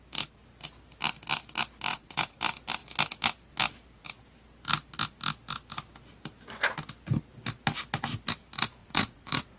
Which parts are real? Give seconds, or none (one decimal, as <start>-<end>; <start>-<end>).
0.0-1.9; 2.4-8.8